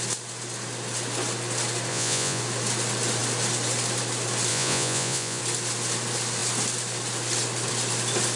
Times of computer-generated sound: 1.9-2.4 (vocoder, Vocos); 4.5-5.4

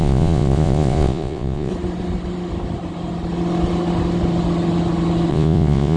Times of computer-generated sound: 0.0-1.7 (vocoder, Vocos); 5.3-6.0

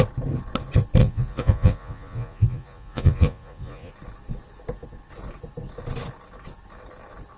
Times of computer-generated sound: 1.0-3.9 (vocoder, Vocos)

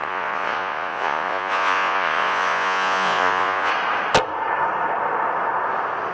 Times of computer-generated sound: 0.0-3.7 (vocoder, Vocos)

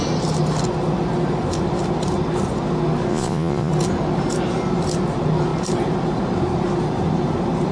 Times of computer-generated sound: 3.1-3.7 (vocoder, Vocos)

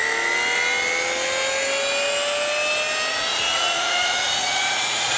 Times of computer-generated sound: 3.1-5.2 (vocoder, Vocos)

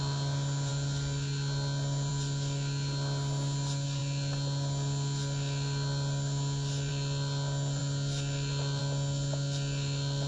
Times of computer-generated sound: none